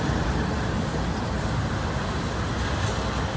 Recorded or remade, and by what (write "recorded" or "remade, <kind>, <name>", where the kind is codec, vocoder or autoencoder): recorded